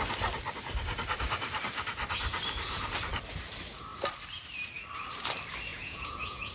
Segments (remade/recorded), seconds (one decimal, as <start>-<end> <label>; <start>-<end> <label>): 0.0-5.7 recorded; 5.7-6.5 remade